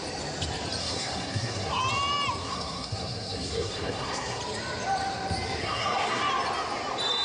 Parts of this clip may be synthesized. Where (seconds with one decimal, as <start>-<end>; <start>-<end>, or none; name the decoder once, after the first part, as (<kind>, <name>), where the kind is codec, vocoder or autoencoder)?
0.8-1.8 (codec, SNAC); 2.4-4.4; 5.6-6.2